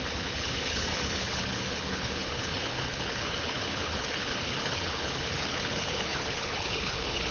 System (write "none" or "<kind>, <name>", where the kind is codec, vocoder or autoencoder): codec, HILCodec